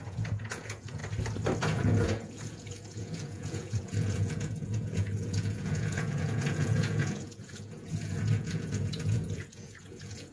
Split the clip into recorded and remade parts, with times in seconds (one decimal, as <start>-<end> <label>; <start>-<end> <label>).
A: 0.0-1.0 remade; 1.0-1.6 recorded; 1.6-10.3 remade